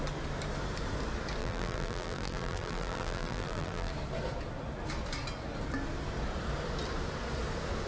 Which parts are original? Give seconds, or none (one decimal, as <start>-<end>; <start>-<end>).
0.0-1.4; 3.9-7.9